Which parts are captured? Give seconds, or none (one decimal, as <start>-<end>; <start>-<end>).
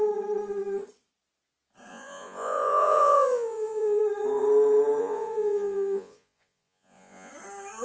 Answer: 0.0-1.9; 4.0-5.0; 7.3-7.8